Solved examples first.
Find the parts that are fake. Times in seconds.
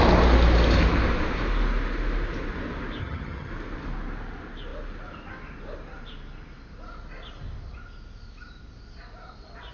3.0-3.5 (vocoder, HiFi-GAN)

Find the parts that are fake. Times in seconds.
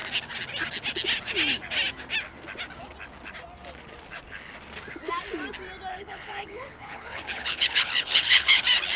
5.9-8.6 (codec, HILCodec)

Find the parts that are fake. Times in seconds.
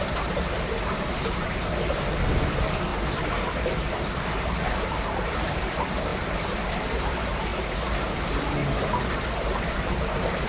0.0-2.9 (vocoder, BigVGAN v2); 3.7-6.1; 6.9-7.5; 8.0-8.6; 9.6-10.5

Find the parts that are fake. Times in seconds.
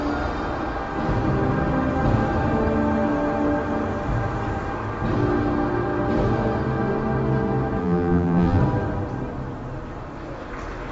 7.8-8.6 (vocoder, BigVGAN v2)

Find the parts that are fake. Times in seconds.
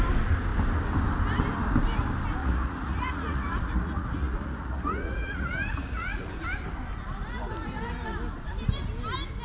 2.4-6.3 (vocoder, Vocos)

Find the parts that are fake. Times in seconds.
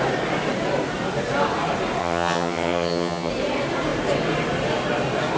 2.0-3.3 (vocoder, HiFi-GAN)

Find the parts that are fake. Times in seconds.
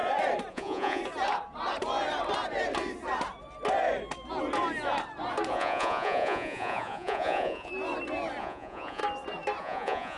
0.5-1.0 (vocoder, Vocos); 5.5-7.7; 8.4-9.0; 9.6-10.2